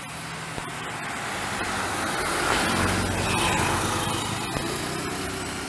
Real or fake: real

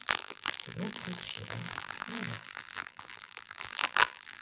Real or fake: fake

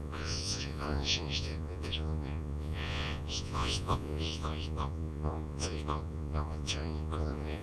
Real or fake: fake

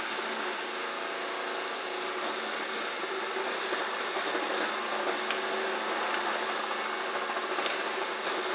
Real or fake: real